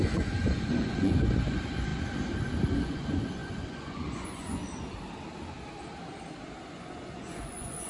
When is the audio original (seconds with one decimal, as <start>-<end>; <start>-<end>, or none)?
1.9-2.7; 4.6-6.7